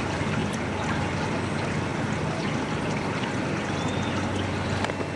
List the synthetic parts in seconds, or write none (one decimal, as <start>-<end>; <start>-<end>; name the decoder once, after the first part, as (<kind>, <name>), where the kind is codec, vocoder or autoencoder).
1.9-3.4 (vocoder, BigVGAN v2)